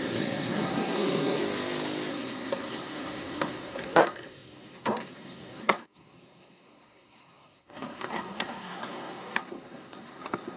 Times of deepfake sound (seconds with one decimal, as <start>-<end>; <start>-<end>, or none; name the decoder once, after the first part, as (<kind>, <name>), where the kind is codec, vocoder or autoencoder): 0.0-1.4 (codec, SNAC); 2.1-10.6